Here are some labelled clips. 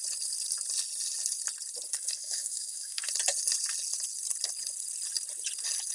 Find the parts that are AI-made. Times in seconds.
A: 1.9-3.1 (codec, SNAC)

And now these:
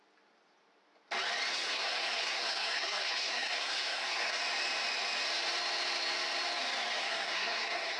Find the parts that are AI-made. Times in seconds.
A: 1.5-4.4 (codec, SNAC); 7.0-8.0